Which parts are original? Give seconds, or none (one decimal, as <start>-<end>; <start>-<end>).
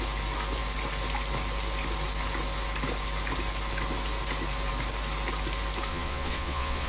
0.0-5.9